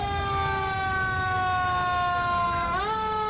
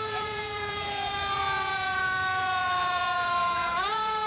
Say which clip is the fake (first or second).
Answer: second